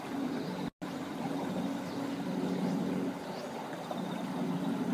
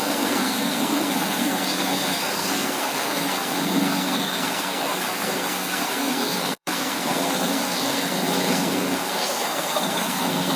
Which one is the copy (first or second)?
second